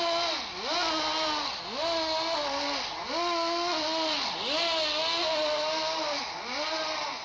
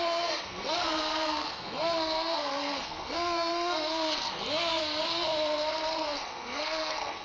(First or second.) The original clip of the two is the first